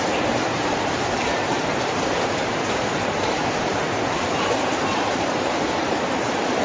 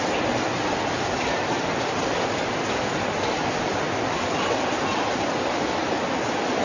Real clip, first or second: second